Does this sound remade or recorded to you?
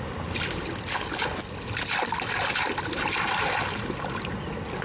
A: recorded